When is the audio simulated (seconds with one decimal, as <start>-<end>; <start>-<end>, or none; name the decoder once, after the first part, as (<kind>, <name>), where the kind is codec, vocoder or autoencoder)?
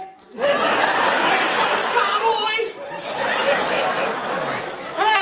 1.3-4.2 (vocoder, BigVGAN v2)